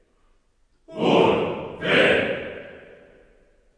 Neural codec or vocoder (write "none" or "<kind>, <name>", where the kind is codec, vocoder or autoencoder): none